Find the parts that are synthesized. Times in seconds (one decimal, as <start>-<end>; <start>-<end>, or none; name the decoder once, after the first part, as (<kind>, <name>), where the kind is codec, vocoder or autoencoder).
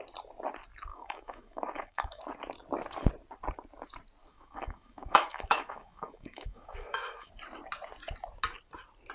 0.9-2.2 (autoencoder, DAC-VAE); 4.2-7.3